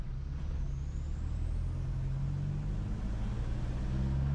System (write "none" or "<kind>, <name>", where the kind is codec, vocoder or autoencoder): none